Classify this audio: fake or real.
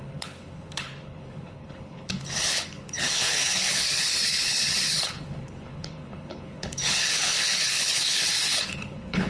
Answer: fake